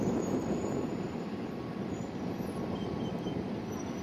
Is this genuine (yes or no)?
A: no